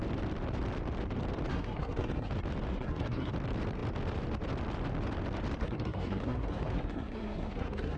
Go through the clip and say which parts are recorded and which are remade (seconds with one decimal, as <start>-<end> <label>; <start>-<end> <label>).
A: 0.0-1.5 recorded; 1.5-2.3 remade; 2.3-2.7 recorded; 2.7-3.3 remade; 3.3-5.6 recorded; 5.6-8.0 remade